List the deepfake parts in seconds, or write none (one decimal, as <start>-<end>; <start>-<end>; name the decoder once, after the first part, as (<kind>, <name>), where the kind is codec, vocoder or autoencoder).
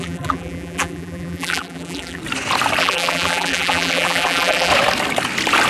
0.0-2.2 (vocoder, BigVGAN v2); 2.8-4.7